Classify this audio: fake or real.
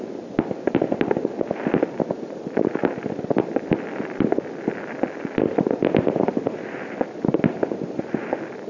real